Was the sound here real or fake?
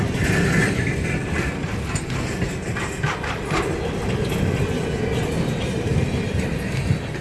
real